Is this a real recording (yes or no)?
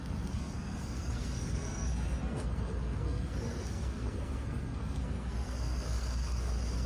no